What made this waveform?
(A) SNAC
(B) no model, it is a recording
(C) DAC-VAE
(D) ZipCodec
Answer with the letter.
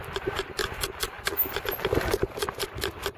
B